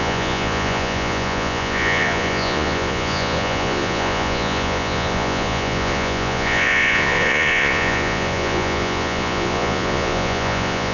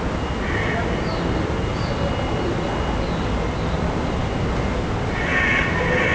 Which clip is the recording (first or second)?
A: second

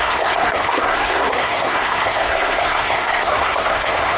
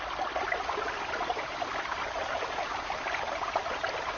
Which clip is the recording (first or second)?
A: second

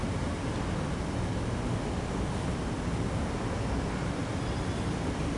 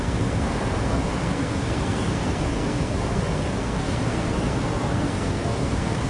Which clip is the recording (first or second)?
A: first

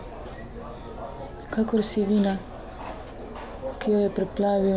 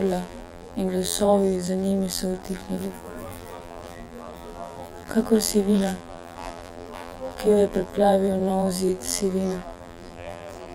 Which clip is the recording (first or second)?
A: first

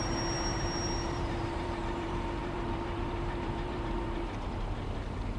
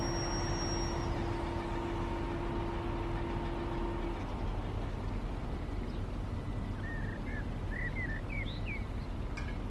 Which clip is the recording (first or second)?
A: second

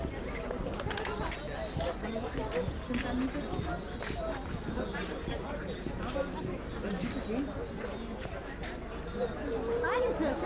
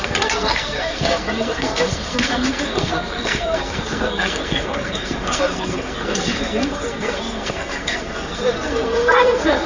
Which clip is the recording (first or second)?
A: first